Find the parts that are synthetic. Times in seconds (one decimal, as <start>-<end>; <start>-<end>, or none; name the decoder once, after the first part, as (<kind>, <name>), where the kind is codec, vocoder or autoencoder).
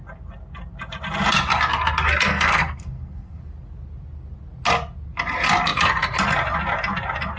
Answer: 2.3-3.4 (codec, SNAC)